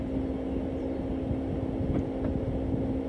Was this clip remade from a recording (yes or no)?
no